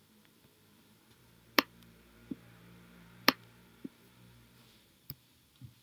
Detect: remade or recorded remade